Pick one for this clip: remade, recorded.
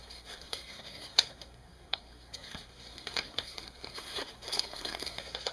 remade